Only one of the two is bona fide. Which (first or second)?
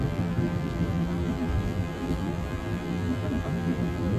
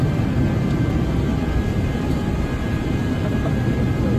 second